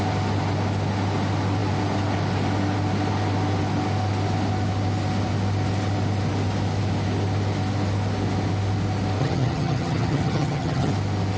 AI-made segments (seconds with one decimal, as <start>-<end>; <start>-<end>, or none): 9.2-10.9